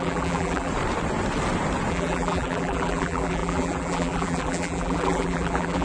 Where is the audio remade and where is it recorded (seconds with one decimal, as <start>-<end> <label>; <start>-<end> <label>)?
0.0-0.7 remade; 0.7-1.9 recorded; 1.9-5.8 remade